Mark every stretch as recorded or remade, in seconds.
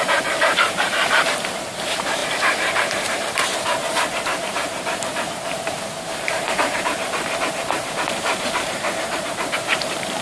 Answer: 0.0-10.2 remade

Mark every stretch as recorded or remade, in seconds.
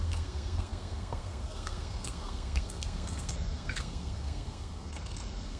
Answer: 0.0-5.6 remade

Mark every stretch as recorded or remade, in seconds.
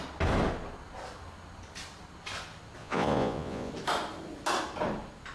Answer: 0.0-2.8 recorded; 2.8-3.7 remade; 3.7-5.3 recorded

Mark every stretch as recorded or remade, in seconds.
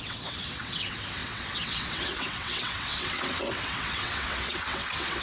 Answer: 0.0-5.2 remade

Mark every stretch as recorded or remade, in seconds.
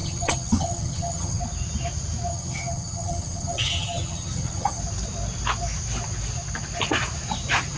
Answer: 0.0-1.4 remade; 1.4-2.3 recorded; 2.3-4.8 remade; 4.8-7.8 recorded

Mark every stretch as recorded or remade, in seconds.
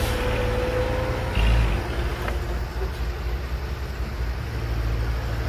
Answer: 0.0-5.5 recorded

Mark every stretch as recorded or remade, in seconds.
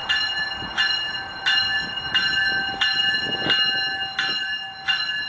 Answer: 0.0-5.3 recorded